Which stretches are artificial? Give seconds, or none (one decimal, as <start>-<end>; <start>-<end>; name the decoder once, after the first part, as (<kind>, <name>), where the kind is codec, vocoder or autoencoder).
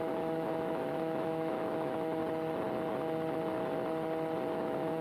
0.0-2.2 (autoencoder, DAC-VAE); 4.5-5.0